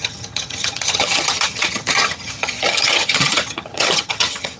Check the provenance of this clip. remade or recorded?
remade